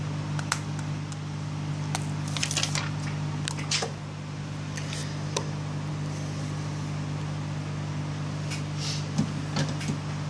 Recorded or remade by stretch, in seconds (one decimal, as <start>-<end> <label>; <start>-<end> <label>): 0.0-10.3 recorded